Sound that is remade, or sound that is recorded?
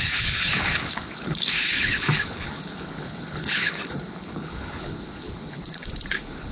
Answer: remade